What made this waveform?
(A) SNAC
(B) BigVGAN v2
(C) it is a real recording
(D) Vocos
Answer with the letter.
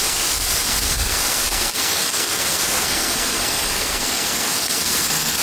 A